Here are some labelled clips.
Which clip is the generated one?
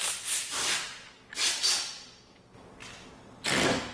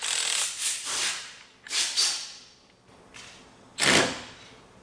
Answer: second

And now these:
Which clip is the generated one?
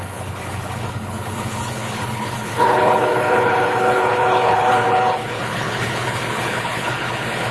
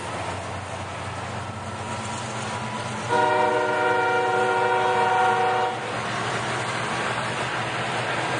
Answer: first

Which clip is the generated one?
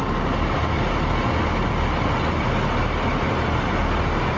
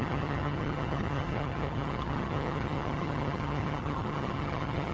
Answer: second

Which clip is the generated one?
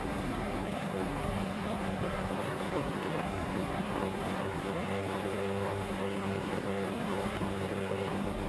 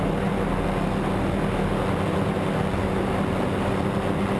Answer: first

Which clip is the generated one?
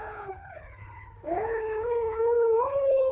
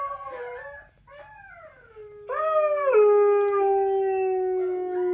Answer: first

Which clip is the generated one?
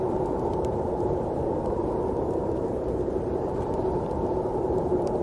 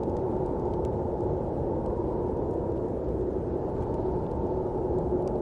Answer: first